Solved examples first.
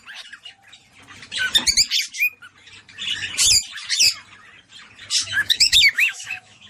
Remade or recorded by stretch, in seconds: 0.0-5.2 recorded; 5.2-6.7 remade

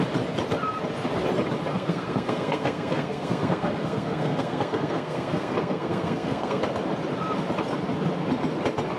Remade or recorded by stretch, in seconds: 0.0-1.7 recorded; 1.7-6.6 remade; 6.6-9.0 recorded

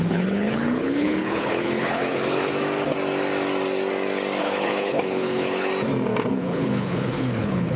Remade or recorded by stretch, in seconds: 0.0-2.5 remade; 2.5-4.4 recorded; 4.4-5.7 remade; 5.7-6.3 recorded; 6.3-7.8 remade

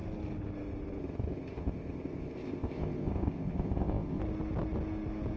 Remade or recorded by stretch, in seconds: 0.0-1.0 recorded; 1.0-4.2 remade; 4.2-5.4 recorded

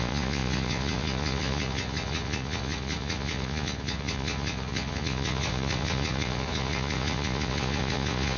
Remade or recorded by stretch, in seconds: 0.0-8.4 remade